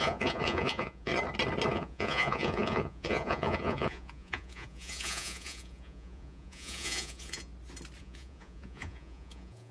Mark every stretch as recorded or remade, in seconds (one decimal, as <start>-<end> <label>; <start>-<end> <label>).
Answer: 0.0-1.1 remade; 1.1-1.7 recorded; 1.7-7.5 remade; 7.5-8.0 recorded; 8.0-9.7 remade